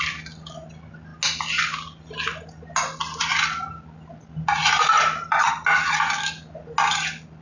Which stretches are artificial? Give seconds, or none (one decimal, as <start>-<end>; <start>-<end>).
none